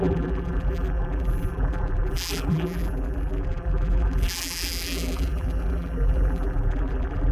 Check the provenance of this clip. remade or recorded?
remade